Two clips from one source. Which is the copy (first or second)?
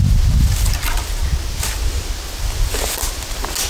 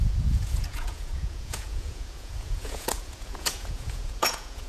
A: second